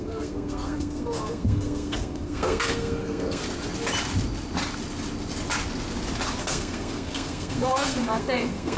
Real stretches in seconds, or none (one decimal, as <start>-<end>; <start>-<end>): 3.4-6.4